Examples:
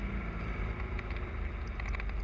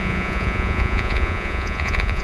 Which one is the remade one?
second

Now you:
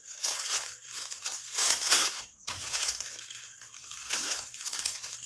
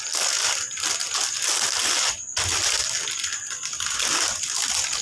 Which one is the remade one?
first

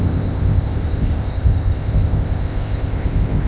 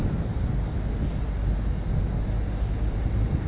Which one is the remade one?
first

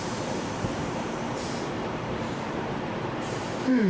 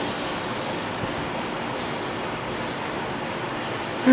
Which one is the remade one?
first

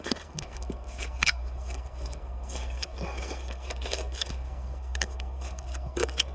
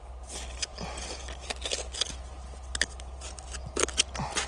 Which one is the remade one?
first